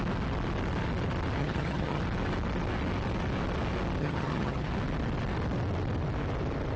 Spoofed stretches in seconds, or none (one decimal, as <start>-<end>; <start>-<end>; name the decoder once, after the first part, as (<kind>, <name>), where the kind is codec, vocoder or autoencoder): 1.4-2.0 (vocoder, HiFi-GAN); 4.0-4.7